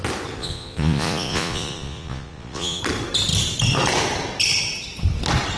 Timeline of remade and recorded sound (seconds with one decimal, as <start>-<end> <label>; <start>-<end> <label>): 0.0-0.4 recorded; 0.4-2.8 remade; 2.8-5.6 recorded

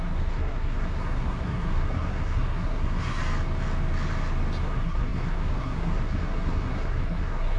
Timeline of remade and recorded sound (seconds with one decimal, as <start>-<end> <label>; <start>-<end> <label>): 0.0-3.2 remade; 3.2-4.6 recorded; 4.6-7.6 remade

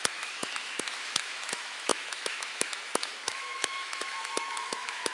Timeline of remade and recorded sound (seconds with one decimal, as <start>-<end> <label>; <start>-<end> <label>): 0.0-5.1 remade

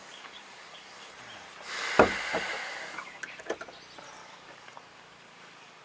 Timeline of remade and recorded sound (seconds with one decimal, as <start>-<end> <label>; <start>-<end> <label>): 0.0-1.1 remade; 1.1-2.6 recorded; 2.6-3.4 remade; 3.4-4.2 recorded; 4.2-5.8 remade

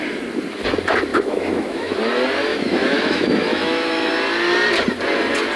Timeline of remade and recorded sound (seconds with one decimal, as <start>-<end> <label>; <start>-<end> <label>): 0.0-1.1 recorded; 1.1-2.0 remade; 2.0-2.5 recorded; 2.5-4.1 remade; 4.1-5.6 recorded

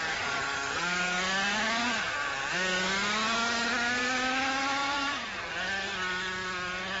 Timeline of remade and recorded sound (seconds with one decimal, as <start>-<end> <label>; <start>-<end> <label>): 0.0-4.8 recorded; 4.8-5.4 remade; 5.4-7.0 recorded

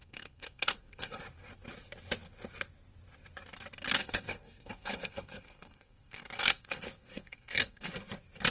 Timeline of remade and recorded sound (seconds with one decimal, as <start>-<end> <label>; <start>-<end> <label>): 0.0-1.2 remade; 1.2-4.0 recorded; 4.0-7.9 remade; 7.9-8.5 recorded